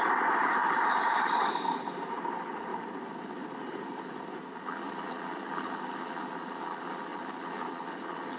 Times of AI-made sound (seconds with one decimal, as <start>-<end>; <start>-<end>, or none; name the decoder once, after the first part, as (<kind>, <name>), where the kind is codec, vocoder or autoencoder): none